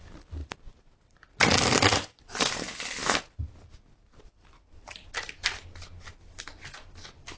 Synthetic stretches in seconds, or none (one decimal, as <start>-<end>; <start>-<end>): 0.4-2.2